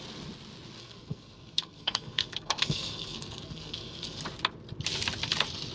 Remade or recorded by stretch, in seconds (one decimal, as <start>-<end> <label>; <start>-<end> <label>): 0.0-0.8 recorded; 0.8-4.2 remade; 4.2-5.7 recorded